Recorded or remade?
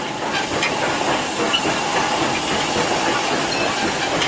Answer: recorded